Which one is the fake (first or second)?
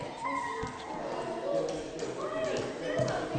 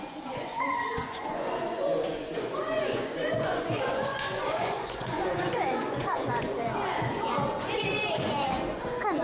second